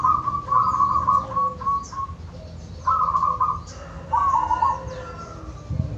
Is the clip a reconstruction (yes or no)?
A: no